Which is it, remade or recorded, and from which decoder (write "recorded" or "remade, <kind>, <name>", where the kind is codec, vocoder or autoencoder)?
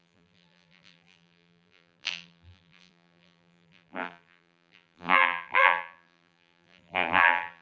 remade, vocoder, BigVGAN v2